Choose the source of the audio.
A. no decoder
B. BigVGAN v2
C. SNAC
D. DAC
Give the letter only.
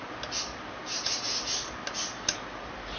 A